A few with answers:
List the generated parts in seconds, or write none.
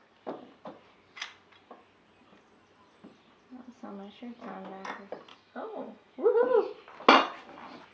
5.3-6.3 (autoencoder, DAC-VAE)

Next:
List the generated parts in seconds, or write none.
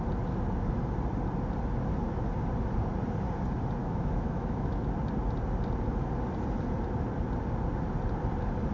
3.8-4.8 (autoencoder, DAC-VAE)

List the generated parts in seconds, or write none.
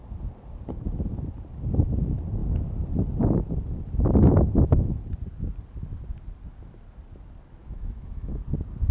7.6-8.4 (autoencoder, DAC-VAE)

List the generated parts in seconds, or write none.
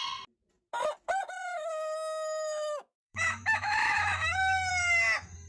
1.4-4.7 (autoencoder, DAC-VAE)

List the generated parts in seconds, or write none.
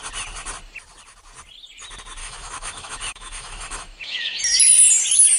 2.2-4.4 (autoencoder, DAC-VAE)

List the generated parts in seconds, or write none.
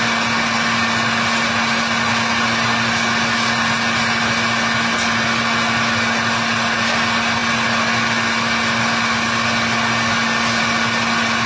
none